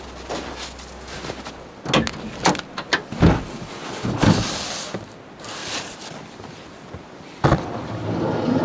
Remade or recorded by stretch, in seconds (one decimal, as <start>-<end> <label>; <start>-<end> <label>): 0.0-8.6 recorded